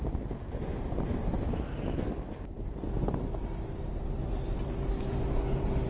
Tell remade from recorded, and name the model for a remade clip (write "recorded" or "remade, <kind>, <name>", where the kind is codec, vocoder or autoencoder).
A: recorded